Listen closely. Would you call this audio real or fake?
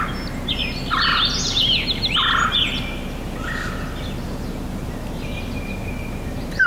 real